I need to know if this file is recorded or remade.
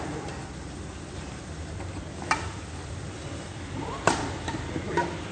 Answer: recorded